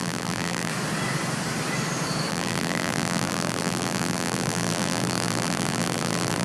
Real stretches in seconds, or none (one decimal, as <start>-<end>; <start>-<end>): 0.7-2.3